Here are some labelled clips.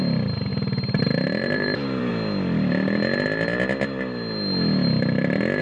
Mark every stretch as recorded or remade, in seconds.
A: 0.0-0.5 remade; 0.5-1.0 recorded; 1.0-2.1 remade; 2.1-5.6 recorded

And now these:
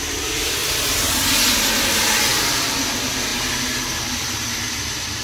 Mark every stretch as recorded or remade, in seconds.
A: 0.0-0.6 recorded; 0.6-1.1 remade; 1.1-5.2 recorded

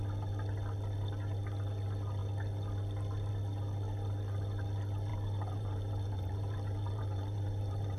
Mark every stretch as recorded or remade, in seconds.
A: 0.0-5.1 recorded; 5.1-8.0 remade